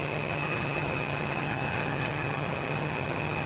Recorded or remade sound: remade